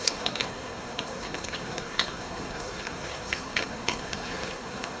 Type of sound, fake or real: fake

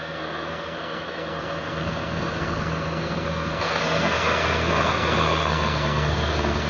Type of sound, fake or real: fake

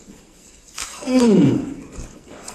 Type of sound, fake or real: fake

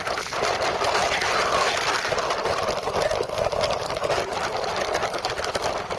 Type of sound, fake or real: real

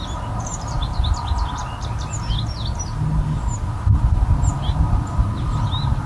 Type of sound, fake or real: real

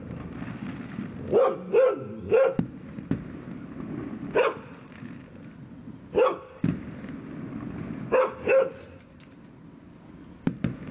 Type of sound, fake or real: real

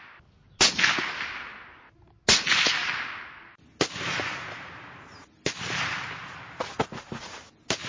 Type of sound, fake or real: real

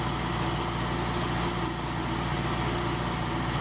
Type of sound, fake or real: real